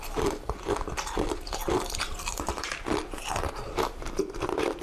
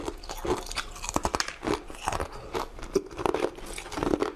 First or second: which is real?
second